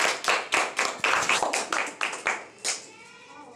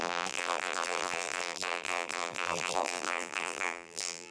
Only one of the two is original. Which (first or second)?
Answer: first